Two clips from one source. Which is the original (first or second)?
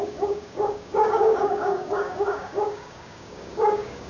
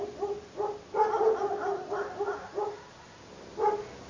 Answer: second